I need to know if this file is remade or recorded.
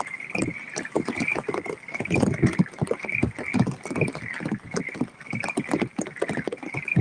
recorded